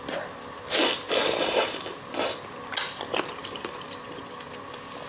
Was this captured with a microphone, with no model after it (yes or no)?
yes